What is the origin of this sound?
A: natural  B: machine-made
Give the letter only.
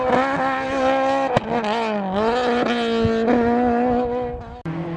A